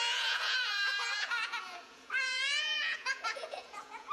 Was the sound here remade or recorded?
remade